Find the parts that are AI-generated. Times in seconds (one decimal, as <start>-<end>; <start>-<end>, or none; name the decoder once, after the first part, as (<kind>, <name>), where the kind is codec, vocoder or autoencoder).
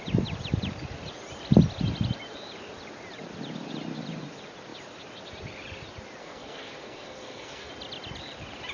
6.2-7.7 (codec, SNAC)